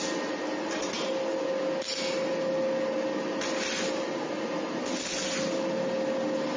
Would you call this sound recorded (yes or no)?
yes